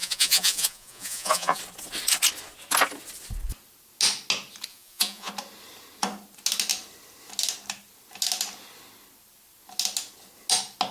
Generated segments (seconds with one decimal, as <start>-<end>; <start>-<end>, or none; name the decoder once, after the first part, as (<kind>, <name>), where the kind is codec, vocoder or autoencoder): 0.0-1.6 (vocoder, Vocos); 4.7-5.3